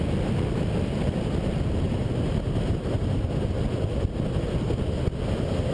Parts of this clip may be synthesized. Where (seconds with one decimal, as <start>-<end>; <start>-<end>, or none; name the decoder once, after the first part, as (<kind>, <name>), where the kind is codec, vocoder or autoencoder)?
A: 2.0-3.0 (vocoder, BigVGAN v2)

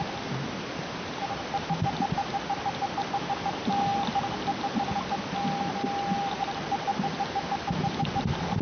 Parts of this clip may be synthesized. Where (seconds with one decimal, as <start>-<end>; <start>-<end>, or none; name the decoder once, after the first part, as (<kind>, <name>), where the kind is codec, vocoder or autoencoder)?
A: none

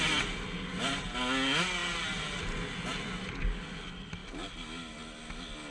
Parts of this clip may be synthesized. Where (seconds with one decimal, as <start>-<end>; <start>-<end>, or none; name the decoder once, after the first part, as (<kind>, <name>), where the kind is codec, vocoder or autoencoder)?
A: none

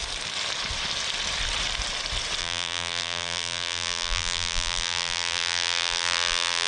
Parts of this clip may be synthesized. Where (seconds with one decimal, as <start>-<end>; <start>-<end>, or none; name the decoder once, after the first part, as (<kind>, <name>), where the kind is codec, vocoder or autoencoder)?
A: 2.4-6.7 (vocoder, BigVGAN v2)